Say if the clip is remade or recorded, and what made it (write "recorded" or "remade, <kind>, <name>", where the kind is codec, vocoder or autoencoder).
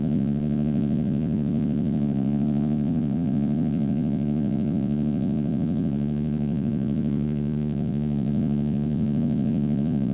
remade, vocoder, Vocos